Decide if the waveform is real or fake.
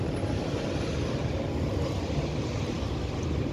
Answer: real